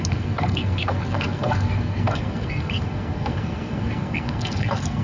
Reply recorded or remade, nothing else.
remade